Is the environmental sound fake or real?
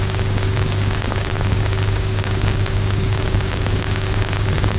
fake